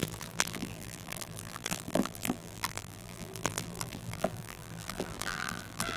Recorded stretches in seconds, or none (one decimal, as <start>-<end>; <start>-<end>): none